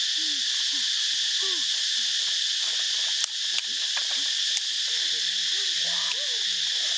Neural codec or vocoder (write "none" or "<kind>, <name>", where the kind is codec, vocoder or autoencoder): none